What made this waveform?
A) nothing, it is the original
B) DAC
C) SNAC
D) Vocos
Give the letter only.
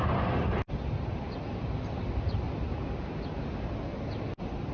A